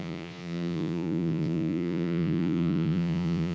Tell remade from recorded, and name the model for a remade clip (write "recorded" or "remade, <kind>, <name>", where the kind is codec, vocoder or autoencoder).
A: remade, vocoder, Vocos